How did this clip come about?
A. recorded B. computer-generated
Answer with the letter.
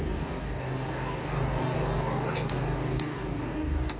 B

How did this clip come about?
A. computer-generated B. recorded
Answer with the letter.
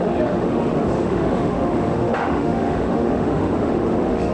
A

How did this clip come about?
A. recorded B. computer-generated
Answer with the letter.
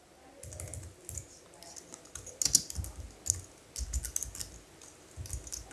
A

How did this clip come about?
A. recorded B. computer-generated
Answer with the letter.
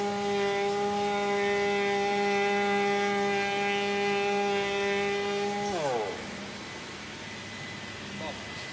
A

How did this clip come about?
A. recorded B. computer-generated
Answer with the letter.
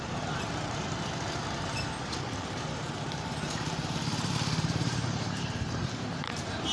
B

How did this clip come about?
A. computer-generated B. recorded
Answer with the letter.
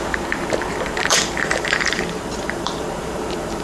A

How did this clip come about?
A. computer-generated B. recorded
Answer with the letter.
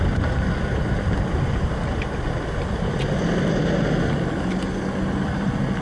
B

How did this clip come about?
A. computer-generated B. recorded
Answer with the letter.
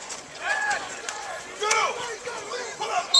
A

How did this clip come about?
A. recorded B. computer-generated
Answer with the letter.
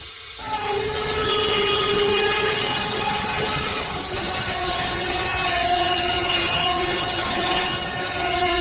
B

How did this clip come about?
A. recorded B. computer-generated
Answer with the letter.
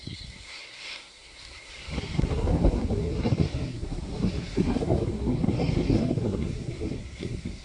B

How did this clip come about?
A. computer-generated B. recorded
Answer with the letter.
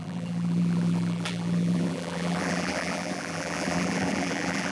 A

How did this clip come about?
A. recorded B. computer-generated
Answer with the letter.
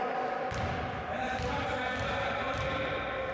A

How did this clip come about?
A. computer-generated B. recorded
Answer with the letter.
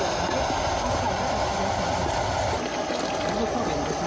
B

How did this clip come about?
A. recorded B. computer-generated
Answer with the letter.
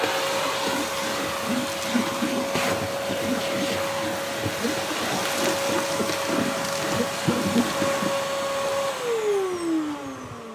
A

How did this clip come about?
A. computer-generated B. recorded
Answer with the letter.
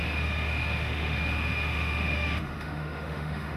A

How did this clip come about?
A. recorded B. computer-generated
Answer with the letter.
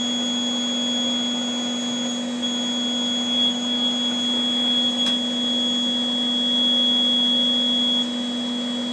A